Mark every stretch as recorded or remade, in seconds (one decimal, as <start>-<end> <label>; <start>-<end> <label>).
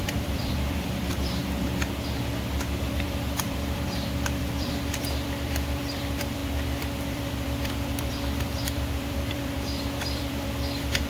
0.0-1.4 remade; 1.4-2.8 recorded; 2.8-11.1 remade